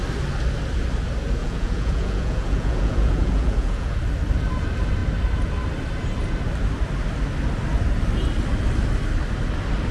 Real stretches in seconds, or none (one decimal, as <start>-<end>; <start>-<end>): 0.0-1.4; 4.0-9.9

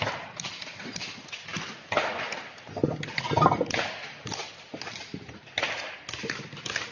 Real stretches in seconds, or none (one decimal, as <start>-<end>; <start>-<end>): 0.0-6.9

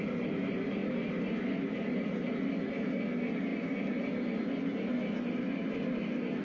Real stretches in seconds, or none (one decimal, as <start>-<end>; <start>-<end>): 0.0-6.4

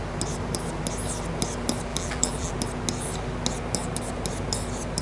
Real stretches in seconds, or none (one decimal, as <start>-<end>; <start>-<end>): 0.0-1.9; 2.5-5.0

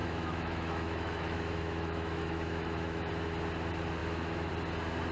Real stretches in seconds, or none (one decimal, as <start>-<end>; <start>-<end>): 3.1-4.0; 4.5-5.1

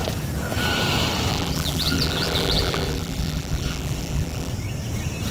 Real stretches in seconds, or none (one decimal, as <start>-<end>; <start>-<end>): 0.0-1.3; 4.5-5.3

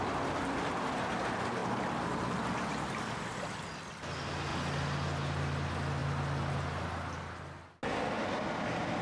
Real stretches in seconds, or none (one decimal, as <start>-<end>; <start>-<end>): 0.0-9.0

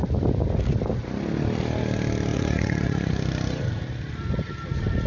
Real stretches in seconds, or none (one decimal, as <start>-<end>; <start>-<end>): 0.0-2.3; 3.1-5.1